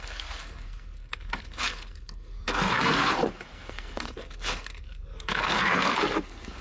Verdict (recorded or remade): remade